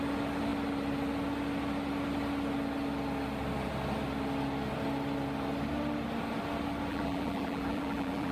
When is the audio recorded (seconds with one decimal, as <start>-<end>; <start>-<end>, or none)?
0.0-6.9